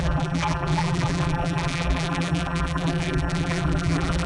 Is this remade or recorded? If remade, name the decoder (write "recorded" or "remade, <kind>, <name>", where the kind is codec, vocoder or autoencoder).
remade, vocoder, BigVGAN v2